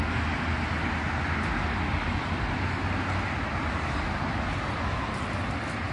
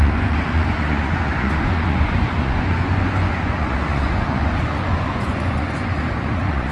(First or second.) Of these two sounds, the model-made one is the second